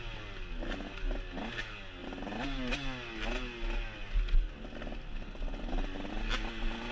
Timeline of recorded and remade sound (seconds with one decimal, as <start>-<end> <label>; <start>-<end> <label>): 0.0-6.9 recorded